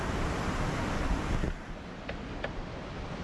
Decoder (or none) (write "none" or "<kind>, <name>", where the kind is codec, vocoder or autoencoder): none